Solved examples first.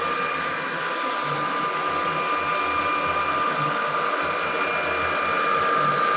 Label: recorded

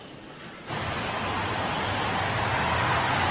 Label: recorded